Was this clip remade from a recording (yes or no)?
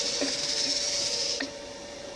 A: yes